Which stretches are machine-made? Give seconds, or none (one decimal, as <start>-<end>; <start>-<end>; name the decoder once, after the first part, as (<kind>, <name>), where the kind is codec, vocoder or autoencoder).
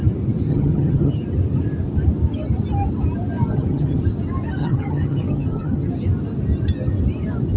0.5-1.1 (vocoder, HiFi-GAN); 3.5-4.0; 4.6-5.9